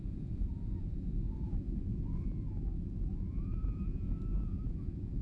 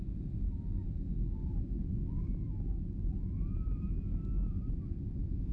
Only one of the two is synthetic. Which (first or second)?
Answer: first